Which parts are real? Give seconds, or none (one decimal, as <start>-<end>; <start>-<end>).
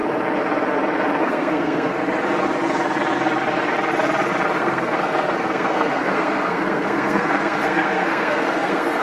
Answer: 0.0-1.2; 2.0-4.6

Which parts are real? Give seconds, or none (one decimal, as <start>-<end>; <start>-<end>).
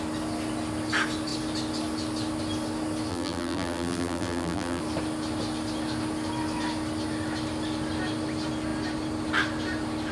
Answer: 0.0-3.1; 4.8-10.1